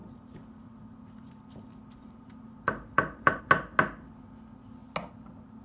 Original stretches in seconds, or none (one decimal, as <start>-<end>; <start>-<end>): 3.4-5.6